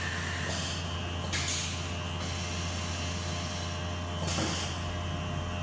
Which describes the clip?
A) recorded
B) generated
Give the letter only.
A